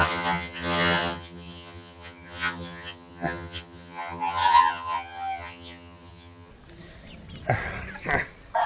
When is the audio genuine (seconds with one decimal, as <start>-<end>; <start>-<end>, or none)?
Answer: 6.5-8.7